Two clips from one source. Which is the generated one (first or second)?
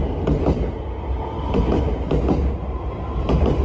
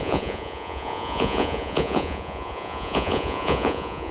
second